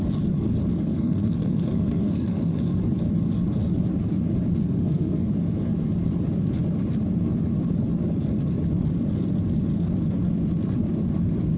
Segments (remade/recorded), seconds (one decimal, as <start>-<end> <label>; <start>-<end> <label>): 0.0-0.7 recorded; 0.7-2.6 remade; 2.6-4.6 recorded; 4.6-5.3 remade; 5.3-11.6 recorded